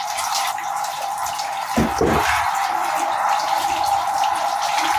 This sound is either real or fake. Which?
real